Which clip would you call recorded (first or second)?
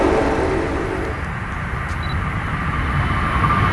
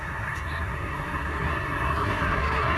first